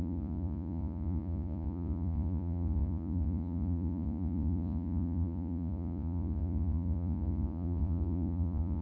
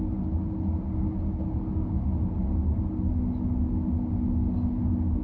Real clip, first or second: second